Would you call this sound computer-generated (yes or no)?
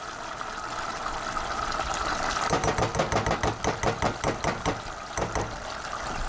no